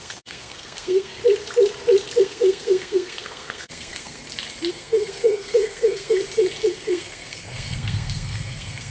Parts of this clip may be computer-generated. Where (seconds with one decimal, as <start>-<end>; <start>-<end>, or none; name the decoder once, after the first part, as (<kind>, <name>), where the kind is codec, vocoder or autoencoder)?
0.0-1.2 (codec, SNAC); 2.2-4.2; 4.7-6.2; 6.7-8.9